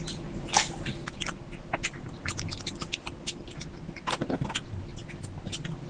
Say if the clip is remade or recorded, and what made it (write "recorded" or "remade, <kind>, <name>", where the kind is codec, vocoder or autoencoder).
recorded